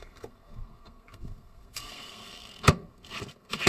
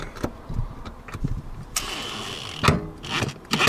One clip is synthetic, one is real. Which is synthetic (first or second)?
first